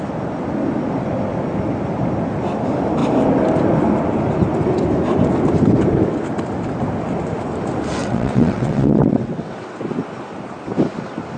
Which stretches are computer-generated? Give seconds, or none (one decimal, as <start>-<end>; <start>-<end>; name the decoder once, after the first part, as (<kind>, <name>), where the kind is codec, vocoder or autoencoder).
8.0-9.9 (vocoder, WaveNeXt)